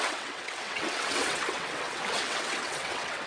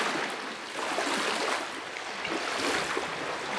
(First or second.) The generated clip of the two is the first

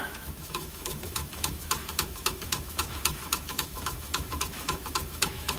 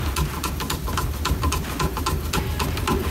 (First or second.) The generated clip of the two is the first